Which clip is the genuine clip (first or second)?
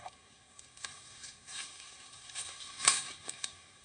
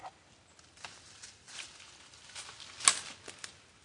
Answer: second